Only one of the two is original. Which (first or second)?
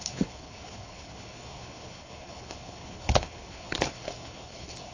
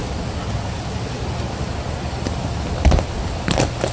second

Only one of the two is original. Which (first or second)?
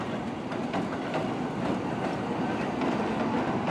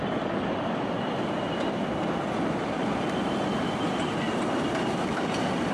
second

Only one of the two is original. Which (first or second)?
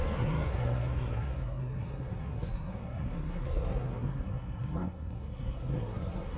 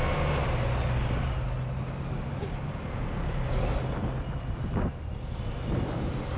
second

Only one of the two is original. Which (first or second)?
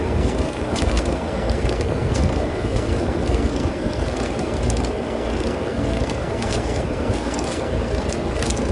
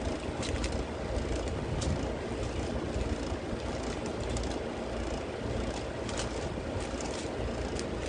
second